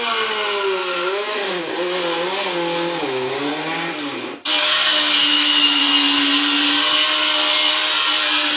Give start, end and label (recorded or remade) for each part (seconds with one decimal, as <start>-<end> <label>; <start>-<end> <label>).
0.0-0.8 recorded; 0.8-1.6 remade; 1.6-3.0 recorded; 3.0-3.5 remade; 3.5-4.5 recorded; 4.5-5.8 remade; 5.8-8.6 recorded